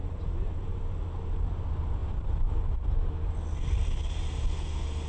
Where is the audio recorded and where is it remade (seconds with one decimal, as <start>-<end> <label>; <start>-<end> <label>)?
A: 0.0-1.0 remade; 1.0-2.0 recorded; 2.0-2.6 remade; 2.6-5.1 recorded

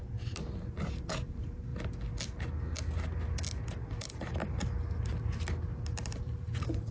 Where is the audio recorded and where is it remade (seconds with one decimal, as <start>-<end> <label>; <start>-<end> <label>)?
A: 0.0-1.7 remade; 1.7-4.0 recorded; 4.0-4.4 remade; 4.4-5.8 recorded; 5.8-6.9 remade

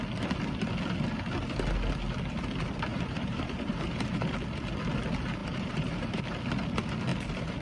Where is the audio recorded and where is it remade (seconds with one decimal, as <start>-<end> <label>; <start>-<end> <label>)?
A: 0.0-2.9 recorded; 2.9-4.2 remade; 4.2-5.4 recorded; 5.4-6.2 remade; 6.2-7.6 recorded

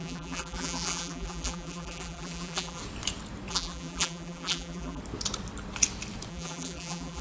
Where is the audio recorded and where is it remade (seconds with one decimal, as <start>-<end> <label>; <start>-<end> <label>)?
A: 0.0-2.8 remade; 2.8-3.5 recorded; 3.5-5.0 remade; 5.0-6.3 recorded; 6.3-7.2 remade

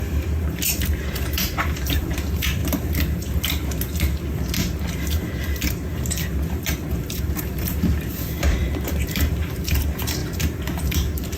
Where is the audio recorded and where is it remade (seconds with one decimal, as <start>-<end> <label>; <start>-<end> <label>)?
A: 0.0-2.6 remade; 2.6-7.0 recorded; 7.0-10.2 remade; 10.2-10.8 recorded; 10.8-11.4 remade